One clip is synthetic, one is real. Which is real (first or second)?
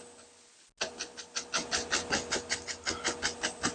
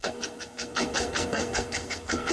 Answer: first